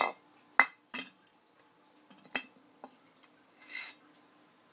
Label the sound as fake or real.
real